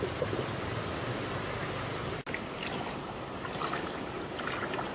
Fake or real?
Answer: real